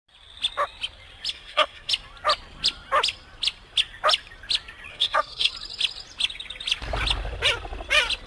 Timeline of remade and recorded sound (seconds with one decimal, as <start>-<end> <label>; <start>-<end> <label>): 0.0-1.3 recorded; 1.3-1.9 remade; 1.9-4.9 recorded; 4.9-5.5 remade; 5.5-8.3 recorded